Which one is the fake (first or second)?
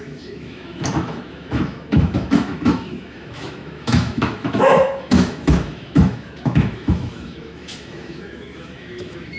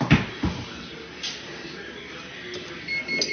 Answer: first